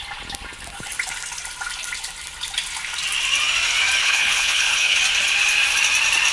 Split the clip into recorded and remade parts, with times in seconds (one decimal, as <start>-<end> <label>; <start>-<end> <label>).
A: 0.0-4.0 recorded; 4.0-5.0 remade; 5.0-6.3 recorded